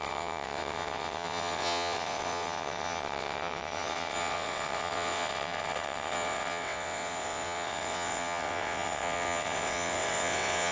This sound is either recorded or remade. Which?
remade